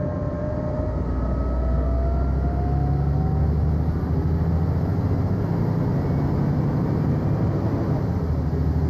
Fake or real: real